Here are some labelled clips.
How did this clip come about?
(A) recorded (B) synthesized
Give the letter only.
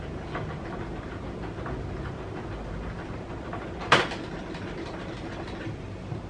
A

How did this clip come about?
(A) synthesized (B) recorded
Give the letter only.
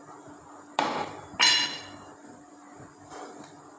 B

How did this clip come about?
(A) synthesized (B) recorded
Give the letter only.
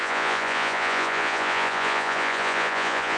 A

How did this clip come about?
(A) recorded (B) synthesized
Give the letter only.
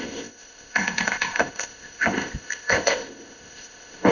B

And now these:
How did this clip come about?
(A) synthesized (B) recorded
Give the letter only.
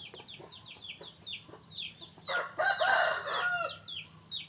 B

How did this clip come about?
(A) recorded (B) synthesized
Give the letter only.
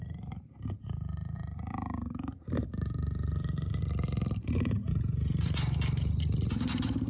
B